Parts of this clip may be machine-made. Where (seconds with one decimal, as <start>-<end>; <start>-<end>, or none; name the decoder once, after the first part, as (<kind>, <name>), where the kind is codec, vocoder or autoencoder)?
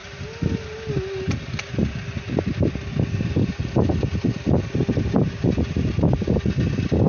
none